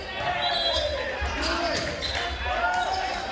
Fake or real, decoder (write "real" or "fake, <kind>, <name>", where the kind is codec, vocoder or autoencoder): real